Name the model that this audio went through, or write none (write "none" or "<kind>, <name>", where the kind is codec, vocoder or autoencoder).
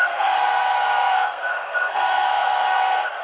codec, SNAC